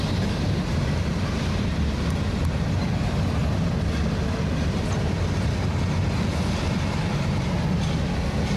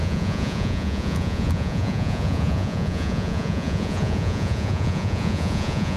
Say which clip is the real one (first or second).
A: first